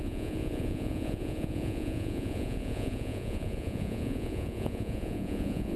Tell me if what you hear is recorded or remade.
remade